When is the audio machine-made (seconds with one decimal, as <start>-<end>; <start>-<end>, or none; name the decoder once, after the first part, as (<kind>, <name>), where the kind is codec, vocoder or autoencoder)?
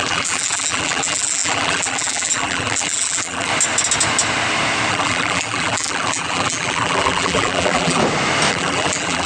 0.0-3.5 (vocoder, BigVGAN v2); 4.9-8.0; 8.5-9.3